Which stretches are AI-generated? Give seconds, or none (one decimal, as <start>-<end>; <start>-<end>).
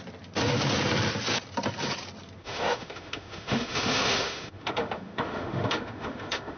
2.4-6.6